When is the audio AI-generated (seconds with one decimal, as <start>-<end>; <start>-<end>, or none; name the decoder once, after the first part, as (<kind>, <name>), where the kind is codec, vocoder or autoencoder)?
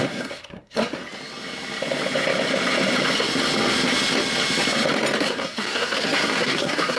0.0-1.0 (codec, SNAC); 5.2-7.0